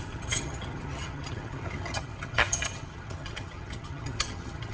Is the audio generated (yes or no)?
yes